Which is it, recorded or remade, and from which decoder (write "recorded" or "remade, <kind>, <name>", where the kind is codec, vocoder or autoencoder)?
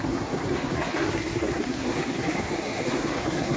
remade, codec, SNAC